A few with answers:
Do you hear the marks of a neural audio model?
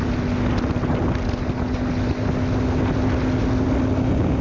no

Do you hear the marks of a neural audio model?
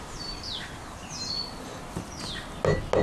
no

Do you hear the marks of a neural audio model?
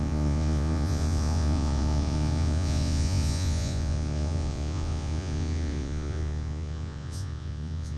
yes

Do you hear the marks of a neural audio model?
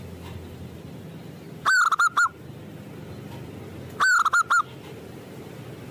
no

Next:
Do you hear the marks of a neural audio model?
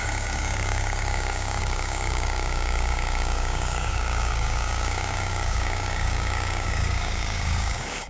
yes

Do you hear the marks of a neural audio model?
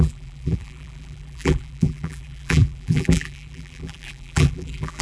yes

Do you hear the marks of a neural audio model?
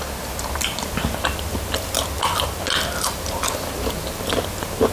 no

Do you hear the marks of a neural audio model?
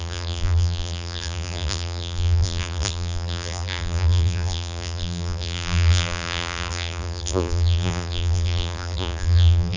yes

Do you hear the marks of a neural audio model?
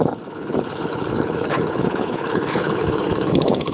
yes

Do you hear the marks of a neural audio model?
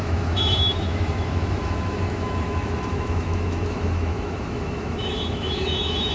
yes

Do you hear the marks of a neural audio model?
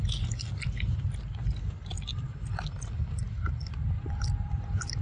no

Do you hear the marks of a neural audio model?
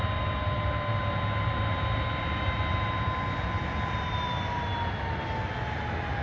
no